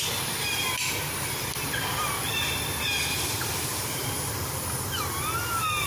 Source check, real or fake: real